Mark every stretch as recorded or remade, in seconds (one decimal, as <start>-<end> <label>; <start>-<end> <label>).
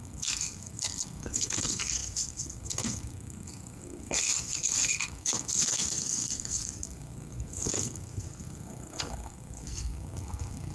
0.0-10.7 remade